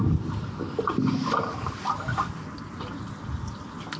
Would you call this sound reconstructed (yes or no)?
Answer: no